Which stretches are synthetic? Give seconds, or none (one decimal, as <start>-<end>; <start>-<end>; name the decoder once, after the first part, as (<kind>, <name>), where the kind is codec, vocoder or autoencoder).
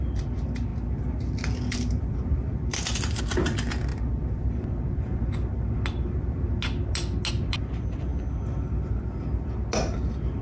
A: none